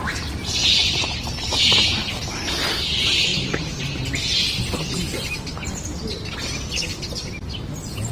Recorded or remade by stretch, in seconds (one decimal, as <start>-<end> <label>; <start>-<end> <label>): 0.0-0.8 recorded; 0.8-2.5 remade; 2.5-3.3 recorded; 3.3-4.0 remade; 4.0-8.1 recorded